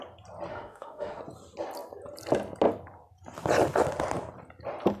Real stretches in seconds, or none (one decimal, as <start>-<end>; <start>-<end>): 0.0-0.5; 1.2-5.0